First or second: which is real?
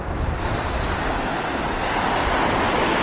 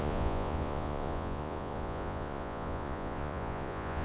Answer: first